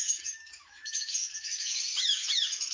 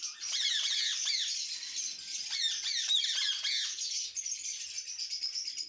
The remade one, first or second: first